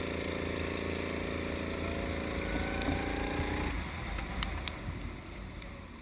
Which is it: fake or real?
real